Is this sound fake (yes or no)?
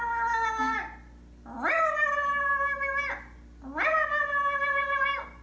no